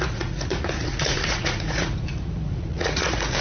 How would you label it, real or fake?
fake